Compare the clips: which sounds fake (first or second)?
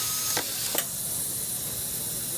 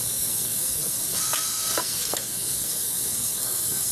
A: second